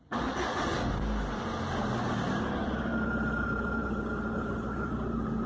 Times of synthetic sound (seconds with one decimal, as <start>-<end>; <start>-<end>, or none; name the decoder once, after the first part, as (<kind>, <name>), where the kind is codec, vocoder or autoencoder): 0.0-0.7 (vocoder, BigVGAN v2); 1.7-5.5